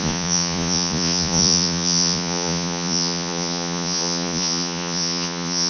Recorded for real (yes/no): no